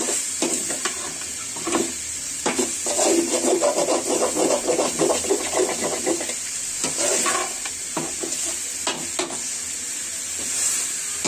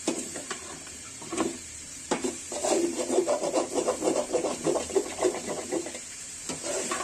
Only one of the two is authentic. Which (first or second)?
first